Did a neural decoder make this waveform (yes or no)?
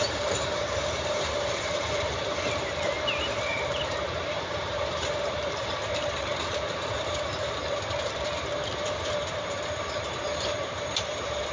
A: yes